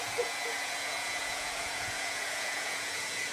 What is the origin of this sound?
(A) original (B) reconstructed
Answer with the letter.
B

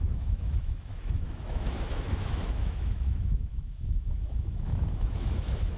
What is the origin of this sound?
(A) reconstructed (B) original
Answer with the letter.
A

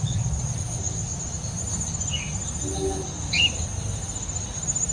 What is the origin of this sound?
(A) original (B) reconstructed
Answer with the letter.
A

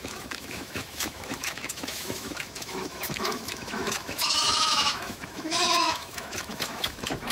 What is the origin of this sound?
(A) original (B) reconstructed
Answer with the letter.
B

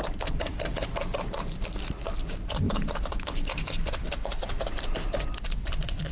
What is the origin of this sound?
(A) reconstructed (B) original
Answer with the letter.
A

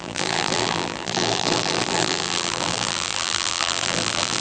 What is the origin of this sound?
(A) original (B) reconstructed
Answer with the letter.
B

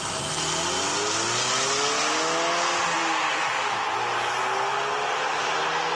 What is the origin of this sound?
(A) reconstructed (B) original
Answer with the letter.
B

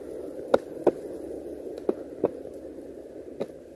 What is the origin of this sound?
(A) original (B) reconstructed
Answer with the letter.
A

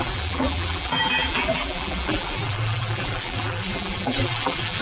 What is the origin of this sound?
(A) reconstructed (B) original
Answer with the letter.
A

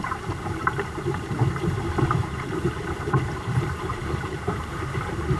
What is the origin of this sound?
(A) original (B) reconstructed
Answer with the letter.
B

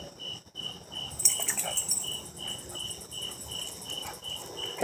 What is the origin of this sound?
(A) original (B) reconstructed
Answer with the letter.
A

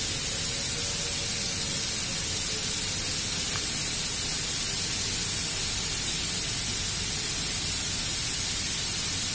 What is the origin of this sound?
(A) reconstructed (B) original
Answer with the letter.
B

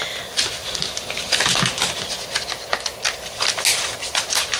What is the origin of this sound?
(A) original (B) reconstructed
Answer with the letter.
A